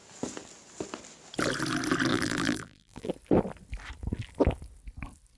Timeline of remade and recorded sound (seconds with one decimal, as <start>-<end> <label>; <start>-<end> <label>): 0.0-2.1 recorded; 2.1-3.1 remade; 3.1-5.4 recorded